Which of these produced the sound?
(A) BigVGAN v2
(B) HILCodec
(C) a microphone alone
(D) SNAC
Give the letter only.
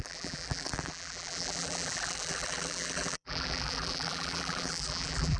A